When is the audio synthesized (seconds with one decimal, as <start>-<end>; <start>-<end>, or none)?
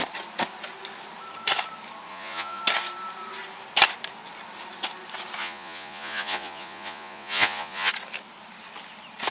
2.1-2.6; 5.4-7.9